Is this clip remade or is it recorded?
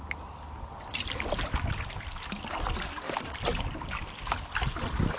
recorded